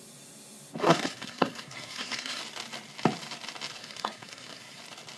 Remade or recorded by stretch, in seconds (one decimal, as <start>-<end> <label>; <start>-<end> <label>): 0.0-0.8 recorded; 0.8-2.4 remade; 2.4-3.8 recorded; 3.8-4.8 remade; 4.8-5.2 recorded